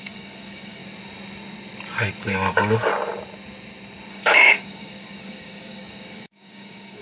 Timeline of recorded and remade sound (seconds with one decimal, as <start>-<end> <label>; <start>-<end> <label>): 0.0-0.8 remade; 0.8-2.2 recorded; 2.2-2.9 remade; 2.9-4.1 recorded; 4.1-7.0 remade